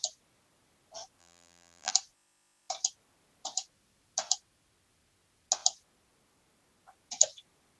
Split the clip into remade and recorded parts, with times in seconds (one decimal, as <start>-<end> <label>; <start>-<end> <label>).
0.0-1.2 recorded; 1.2-1.9 remade; 1.9-7.8 recorded